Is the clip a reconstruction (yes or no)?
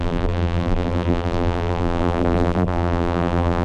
yes